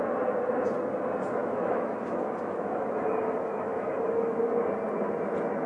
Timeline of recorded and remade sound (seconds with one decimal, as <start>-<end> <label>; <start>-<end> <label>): 0.0-1.4 recorded; 1.4-4.4 remade; 4.4-5.7 recorded